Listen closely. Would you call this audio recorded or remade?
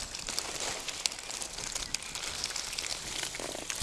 recorded